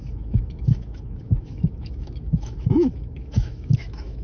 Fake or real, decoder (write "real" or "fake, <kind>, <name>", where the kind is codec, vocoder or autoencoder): fake, autoencoder, DAC-VAE